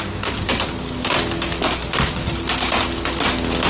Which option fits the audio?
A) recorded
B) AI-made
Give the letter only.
A